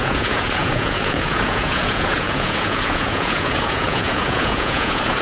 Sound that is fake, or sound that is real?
fake